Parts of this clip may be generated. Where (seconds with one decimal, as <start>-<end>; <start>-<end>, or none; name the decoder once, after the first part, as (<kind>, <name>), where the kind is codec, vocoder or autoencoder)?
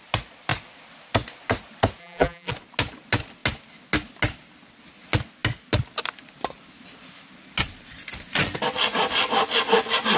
2.0-2.5 (vocoder, BigVGAN v2)